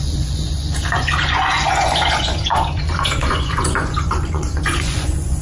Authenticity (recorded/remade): remade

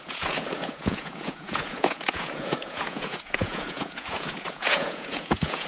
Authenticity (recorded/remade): remade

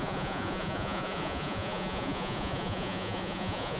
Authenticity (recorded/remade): remade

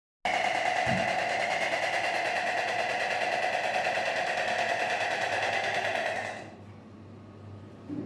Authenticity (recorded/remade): recorded